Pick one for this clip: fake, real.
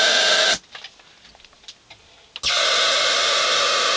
real